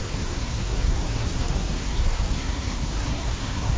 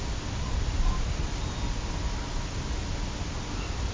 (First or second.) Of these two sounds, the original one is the second